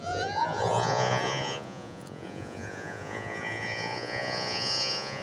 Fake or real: fake